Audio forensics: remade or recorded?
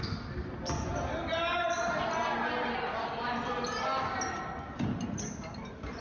recorded